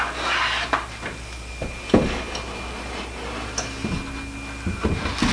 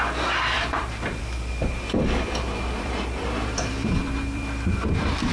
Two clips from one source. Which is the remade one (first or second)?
second